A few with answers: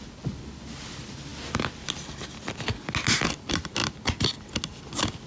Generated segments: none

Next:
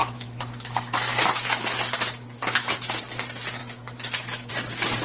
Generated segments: 0.0-3.0 (autoencoder, DAC-VAE); 3.6-4.5

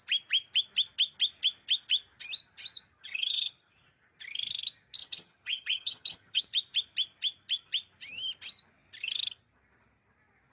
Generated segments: 3.0-3.7 (vocoder, HiFi-GAN); 5.0-6.4

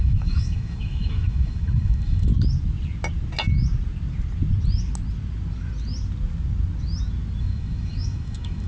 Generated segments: 0.0-2.3 (autoencoder, DAC-VAE); 7.4-8.7

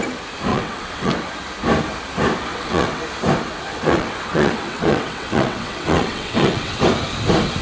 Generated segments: 0.5-1.1 (vocoder, WaveNeXt); 2.5-3.0; 3.7-6.8

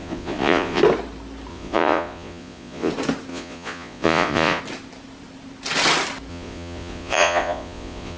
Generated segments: 0.0-0.8 (vocoder, Vocos); 1.5-2.9; 3.3-4.6; 6.3-8.2

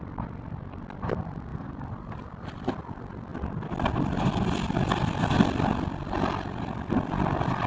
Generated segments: 1.5-2.7 (vocoder, BigVGAN v2)